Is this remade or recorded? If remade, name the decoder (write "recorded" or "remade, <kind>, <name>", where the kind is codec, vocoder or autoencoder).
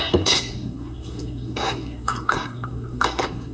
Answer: remade, codec, SNAC